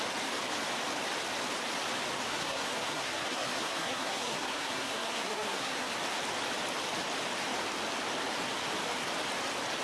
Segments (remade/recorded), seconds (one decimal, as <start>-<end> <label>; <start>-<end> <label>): 0.0-2.3 recorded; 2.3-5.9 remade; 5.9-9.8 recorded